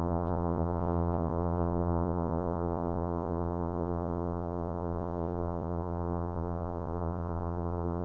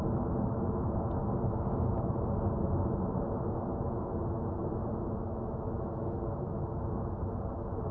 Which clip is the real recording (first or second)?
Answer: second